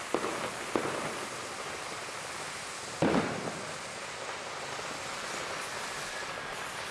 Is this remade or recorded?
recorded